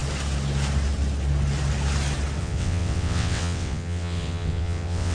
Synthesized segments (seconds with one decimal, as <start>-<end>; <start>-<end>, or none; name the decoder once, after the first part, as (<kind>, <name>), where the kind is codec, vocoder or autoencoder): 2.4-5.1 (vocoder, WaveNeXt)